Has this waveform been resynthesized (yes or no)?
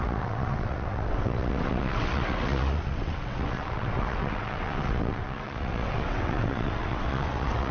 yes